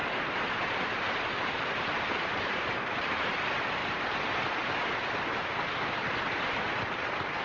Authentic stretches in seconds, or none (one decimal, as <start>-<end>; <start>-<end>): 3.2-7.4